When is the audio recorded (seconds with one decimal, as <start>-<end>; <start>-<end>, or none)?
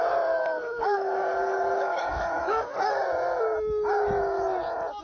0.0-0.4; 2.9-5.0